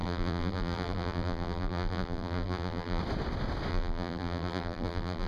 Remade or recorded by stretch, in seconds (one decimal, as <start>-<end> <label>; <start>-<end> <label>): 0.0-3.0 remade; 3.0-3.7 recorded; 3.7-5.3 remade

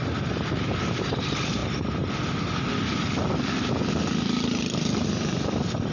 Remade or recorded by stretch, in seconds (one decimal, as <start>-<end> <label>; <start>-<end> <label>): 0.0-5.9 recorded

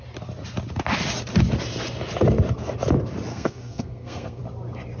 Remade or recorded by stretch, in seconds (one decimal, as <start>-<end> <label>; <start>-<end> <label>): 0.0-3.3 recorded; 3.3-4.4 remade; 4.4-5.0 recorded

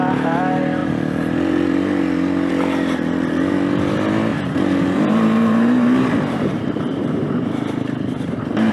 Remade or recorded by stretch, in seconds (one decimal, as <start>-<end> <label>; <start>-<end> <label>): 0.0-4.3 recorded; 4.3-8.7 remade

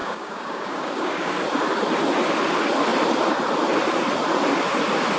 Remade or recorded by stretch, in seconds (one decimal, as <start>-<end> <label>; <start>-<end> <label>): 0.0-1.3 remade; 1.3-5.2 recorded

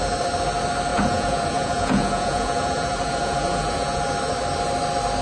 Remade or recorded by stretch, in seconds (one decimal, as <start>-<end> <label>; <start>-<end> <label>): 0.0-0.9 recorded; 0.9-4.0 remade; 4.0-5.2 recorded